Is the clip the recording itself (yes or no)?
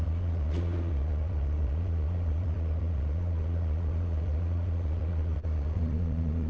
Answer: no